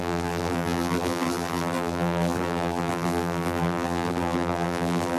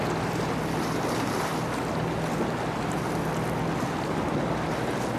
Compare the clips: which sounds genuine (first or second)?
second